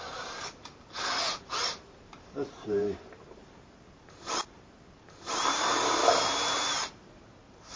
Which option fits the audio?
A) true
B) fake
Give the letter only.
B